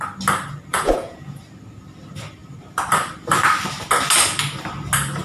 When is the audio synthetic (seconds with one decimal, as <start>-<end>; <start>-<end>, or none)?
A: 0.7-1.4